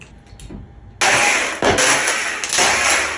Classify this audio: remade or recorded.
recorded